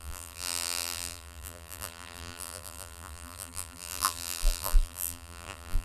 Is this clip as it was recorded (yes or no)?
no